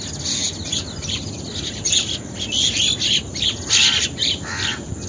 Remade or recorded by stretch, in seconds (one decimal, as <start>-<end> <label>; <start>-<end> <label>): 0.0-5.1 recorded